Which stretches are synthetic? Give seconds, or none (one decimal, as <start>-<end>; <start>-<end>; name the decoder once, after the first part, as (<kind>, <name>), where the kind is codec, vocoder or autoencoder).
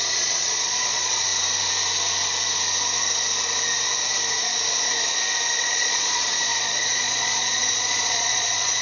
0.0-1.3 (vocoder, Vocos); 5.6-8.8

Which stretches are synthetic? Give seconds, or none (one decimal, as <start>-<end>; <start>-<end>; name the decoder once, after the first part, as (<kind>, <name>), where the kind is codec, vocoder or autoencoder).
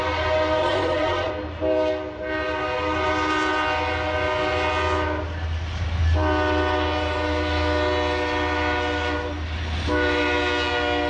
0.6-1.3 (vocoder, Vocos)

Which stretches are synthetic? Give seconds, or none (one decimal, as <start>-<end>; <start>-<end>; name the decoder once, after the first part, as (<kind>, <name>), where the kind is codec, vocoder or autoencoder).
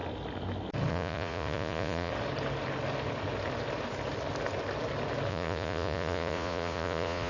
0.9-2.1 (vocoder, Vocos); 5.3-7.3